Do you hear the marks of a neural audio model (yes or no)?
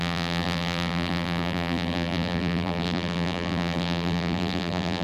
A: yes